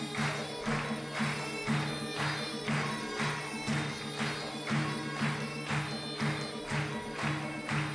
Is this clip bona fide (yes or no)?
yes